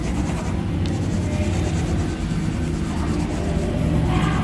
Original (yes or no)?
yes